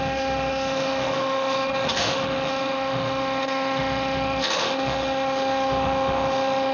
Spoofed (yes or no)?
yes